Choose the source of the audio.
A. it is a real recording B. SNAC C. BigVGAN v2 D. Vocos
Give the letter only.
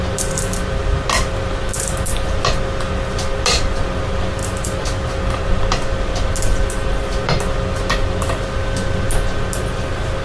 A